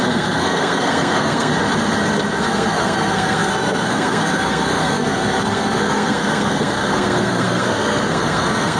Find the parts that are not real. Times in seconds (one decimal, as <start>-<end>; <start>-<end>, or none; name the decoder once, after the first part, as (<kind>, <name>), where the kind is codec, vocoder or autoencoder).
0.0-1.5 (codec, SNAC); 2.4-8.8